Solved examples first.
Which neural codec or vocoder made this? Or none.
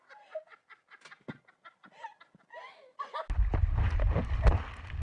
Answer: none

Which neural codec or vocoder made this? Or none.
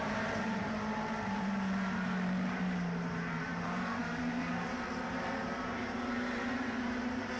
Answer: vocoder, BigVGAN v2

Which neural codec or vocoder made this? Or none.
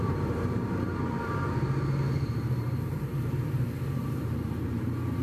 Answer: vocoder, BigVGAN v2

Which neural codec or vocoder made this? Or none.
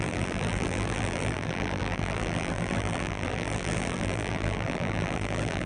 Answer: vocoder, BigVGAN v2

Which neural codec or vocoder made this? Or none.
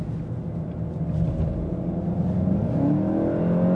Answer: none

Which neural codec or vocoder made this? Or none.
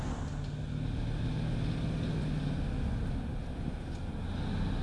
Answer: none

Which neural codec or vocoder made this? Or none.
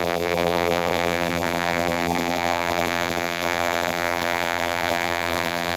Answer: vocoder, BigVGAN v2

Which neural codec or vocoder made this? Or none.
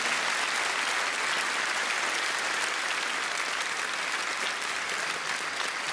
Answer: none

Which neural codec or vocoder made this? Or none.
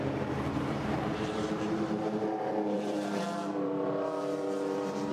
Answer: vocoder, BigVGAN v2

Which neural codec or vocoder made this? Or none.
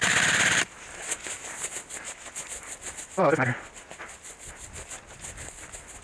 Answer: none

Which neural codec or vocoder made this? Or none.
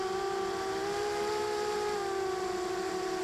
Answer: vocoder, BigVGAN v2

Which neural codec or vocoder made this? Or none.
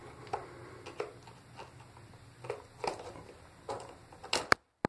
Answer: none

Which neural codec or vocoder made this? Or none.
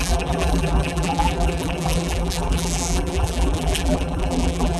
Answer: vocoder, BigVGAN v2